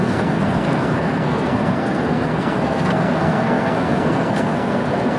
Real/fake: fake